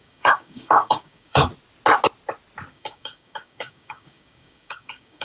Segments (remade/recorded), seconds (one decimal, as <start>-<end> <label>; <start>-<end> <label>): 0.0-1.4 remade; 1.4-2.7 recorded; 2.7-5.2 remade

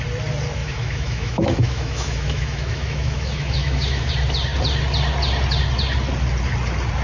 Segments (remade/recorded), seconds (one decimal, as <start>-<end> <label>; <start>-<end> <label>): 0.0-0.6 recorded; 0.6-4.1 remade; 4.1-7.0 recorded

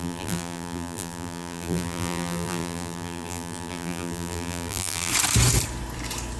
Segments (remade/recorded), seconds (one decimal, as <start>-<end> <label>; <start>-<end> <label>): 0.0-5.1 remade; 5.1-6.4 recorded

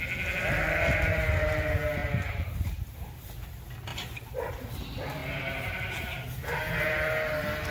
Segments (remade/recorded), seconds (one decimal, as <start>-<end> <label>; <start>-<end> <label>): 0.0-2.0 recorded; 2.0-3.1 remade; 3.1-3.9 recorded; 3.9-4.5 remade; 4.5-7.7 recorded

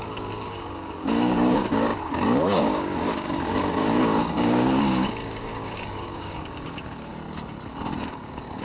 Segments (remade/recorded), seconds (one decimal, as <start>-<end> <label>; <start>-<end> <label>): 0.0-7.1 remade; 7.1-8.0 recorded; 8.0-8.6 remade

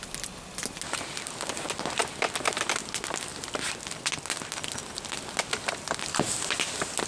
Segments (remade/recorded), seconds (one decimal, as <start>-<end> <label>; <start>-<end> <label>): 0.0-7.1 recorded

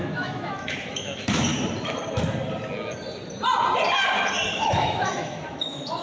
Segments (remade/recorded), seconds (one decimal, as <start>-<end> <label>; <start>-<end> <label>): 0.0-1.5 remade; 1.5-4.5 recorded; 4.5-6.0 remade

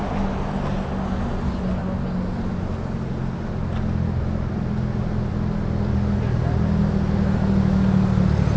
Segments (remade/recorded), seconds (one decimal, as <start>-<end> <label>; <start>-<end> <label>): 0.0-8.6 recorded